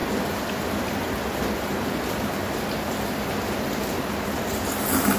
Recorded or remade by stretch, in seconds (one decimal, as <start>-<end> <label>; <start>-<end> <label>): 0.0-5.2 recorded